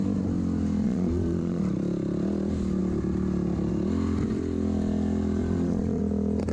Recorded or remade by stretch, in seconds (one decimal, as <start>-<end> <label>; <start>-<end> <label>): 0.0-0.8 recorded; 0.8-1.6 remade; 1.6-5.4 recorded; 5.4-6.0 remade; 6.0-6.5 recorded